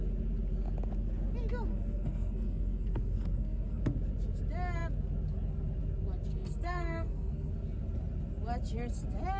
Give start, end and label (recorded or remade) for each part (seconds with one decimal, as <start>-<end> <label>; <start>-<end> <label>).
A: 0.0-1.7 recorded; 1.7-3.8 remade; 3.8-6.3 recorded; 6.3-7.5 remade; 7.5-9.4 recorded

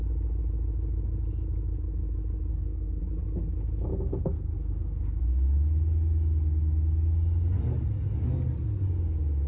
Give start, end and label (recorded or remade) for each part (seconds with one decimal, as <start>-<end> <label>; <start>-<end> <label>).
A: 0.0-2.5 recorded; 2.5-3.0 remade; 3.0-3.9 recorded; 3.9-5.2 remade; 5.2-9.5 recorded

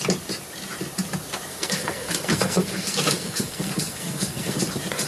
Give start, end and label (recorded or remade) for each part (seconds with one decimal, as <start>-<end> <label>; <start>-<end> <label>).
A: 0.0-1.5 recorded; 1.5-4.6 remade; 4.6-5.1 recorded

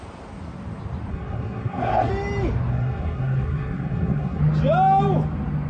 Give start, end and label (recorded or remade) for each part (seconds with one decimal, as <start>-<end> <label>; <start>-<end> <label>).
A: 0.0-1.1 recorded; 1.1-2.1 remade; 2.1-2.7 recorded; 2.7-4.4 remade; 4.4-5.7 recorded

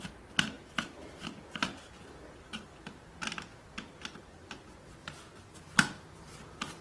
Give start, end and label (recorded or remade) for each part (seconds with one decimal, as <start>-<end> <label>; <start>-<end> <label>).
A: 0.0-6.8 recorded

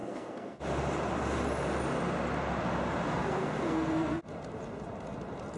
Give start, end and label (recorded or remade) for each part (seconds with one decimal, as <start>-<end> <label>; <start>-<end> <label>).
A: 0.0-0.6 remade; 0.6-3.2 recorded; 3.2-4.2 remade; 4.2-5.6 recorded

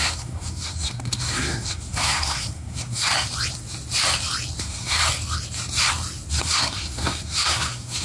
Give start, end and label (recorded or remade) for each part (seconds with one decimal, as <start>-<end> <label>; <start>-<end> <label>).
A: 0.0-3.1 remade; 3.1-4.6 recorded; 4.6-5.0 remade; 5.0-6.3 recorded; 6.3-8.0 remade

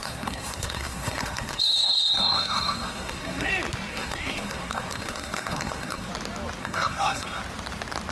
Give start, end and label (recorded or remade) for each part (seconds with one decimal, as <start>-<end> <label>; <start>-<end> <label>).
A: 0.0-3.5 remade; 3.5-3.9 recorded; 3.9-6.1 remade; 6.1-6.6 recorded; 6.6-7.4 remade; 7.4-8.1 recorded